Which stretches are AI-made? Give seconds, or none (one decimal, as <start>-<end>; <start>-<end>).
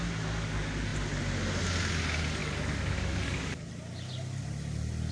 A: 2.4-3.7